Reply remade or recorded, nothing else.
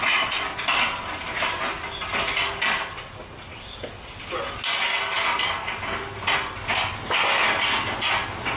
recorded